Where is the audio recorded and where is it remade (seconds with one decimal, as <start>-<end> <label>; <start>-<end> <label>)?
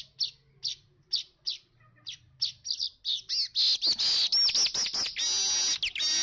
0.0-6.2 recorded